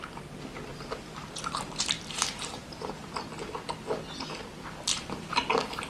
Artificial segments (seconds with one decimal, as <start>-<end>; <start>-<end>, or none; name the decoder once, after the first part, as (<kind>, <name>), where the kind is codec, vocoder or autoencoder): 0.7-3.1 (vocoder, BigVGAN v2); 4.9-5.5